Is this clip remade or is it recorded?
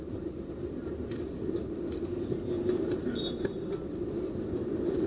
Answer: recorded